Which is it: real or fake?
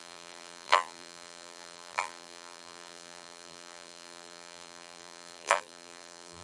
fake